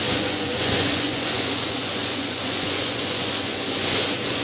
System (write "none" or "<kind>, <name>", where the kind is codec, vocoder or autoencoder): vocoder, Vocos